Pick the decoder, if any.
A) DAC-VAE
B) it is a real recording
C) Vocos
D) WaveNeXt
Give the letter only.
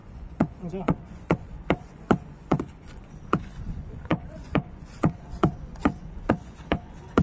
C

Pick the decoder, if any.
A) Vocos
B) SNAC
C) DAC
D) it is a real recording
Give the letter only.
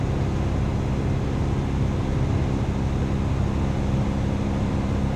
D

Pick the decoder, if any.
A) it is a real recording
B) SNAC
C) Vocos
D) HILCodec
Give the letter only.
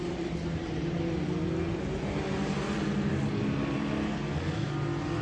A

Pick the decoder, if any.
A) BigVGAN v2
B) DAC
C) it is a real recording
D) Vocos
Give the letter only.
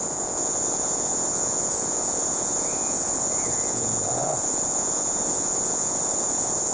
D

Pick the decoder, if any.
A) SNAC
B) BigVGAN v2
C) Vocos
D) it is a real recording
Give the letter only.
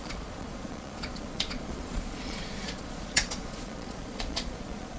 C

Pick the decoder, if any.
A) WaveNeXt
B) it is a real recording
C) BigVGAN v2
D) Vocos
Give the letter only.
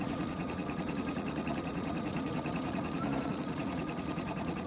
D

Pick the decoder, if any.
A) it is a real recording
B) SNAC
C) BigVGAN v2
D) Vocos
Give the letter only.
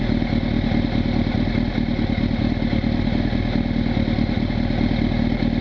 A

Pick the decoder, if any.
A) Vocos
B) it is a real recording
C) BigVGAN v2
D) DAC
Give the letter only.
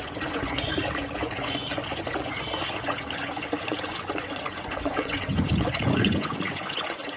A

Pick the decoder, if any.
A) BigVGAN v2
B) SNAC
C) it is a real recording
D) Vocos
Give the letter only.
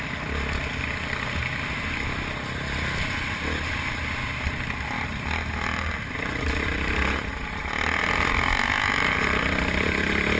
C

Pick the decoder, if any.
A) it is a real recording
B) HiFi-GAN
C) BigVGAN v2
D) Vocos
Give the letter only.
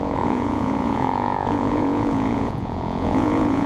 D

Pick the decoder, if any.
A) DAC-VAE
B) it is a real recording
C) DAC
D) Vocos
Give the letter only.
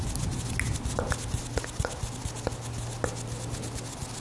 B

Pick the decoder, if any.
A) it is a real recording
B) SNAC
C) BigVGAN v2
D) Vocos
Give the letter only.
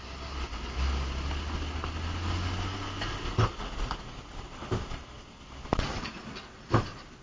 A